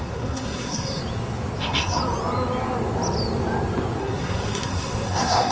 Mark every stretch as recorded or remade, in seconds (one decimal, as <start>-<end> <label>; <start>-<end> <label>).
0.0-1.0 remade; 1.0-1.6 recorded; 1.6-2.0 remade; 2.0-4.0 recorded; 4.0-5.5 remade